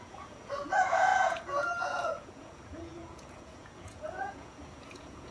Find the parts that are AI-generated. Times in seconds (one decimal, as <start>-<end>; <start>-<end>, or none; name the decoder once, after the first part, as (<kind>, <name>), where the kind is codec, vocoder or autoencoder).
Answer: 0.0-5.3 (vocoder, Vocos)